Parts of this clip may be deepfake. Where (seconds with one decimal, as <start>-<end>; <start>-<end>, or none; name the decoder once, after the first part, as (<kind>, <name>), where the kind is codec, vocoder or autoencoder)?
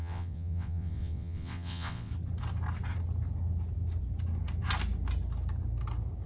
0.0-2.1 (vocoder, WaveNeXt)